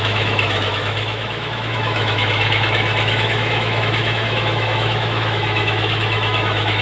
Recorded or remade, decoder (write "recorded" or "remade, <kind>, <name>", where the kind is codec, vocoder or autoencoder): remade, autoencoder, DAC-VAE